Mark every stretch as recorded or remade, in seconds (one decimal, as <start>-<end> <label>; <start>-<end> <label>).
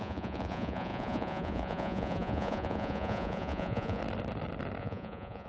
0.0-4.0 remade; 4.0-4.8 recorded; 4.8-5.5 remade